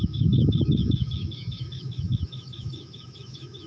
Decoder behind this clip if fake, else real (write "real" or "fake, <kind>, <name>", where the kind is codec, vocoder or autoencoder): fake, autoencoder, DAC-VAE